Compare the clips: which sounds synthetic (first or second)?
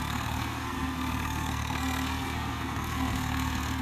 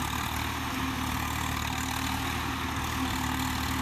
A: first